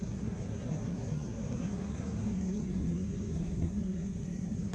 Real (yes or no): no